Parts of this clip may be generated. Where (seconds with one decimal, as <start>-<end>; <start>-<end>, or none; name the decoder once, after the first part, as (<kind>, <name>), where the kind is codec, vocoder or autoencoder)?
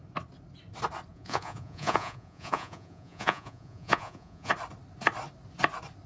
1.1-4.5 (vocoder, Vocos)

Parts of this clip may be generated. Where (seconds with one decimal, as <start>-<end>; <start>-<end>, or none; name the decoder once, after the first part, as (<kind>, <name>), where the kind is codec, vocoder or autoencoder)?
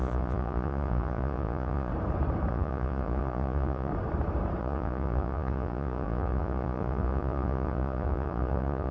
0.0-1.9 (vocoder, Vocos); 2.5-3.9; 4.6-8.9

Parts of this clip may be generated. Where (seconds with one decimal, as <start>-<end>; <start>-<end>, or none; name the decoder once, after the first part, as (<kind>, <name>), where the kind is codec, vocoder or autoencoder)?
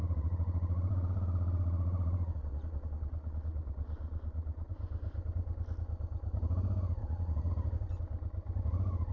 0.0-4.7 (vocoder, Vocos); 7.0-7.5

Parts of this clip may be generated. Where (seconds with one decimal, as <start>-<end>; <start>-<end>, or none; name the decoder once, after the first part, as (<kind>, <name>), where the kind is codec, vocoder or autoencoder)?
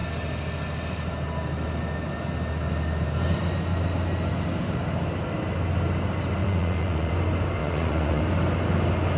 6.4-7.1 (vocoder, Vocos); 7.6-8.2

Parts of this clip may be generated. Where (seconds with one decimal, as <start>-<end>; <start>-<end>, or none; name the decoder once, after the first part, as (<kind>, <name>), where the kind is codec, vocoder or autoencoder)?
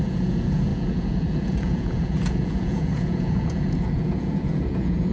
0.0-5.1 (vocoder, Vocos)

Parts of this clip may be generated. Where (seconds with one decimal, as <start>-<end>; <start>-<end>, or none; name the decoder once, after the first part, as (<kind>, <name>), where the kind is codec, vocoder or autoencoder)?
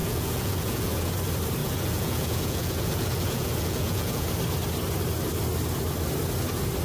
0.0-1.1 (vocoder, Vocos); 1.6-4.3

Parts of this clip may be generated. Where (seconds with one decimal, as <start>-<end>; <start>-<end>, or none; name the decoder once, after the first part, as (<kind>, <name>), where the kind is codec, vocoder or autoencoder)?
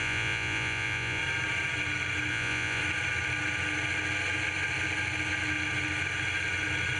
0.0-1.2 (vocoder, Vocos); 2.3-2.8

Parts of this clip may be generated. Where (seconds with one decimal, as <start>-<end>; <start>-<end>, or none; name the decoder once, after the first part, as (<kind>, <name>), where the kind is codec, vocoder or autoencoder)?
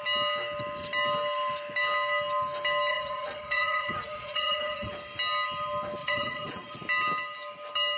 2.9-4.9 (vocoder, Vocos); 6.0-6.8